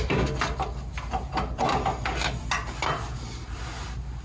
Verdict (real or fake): real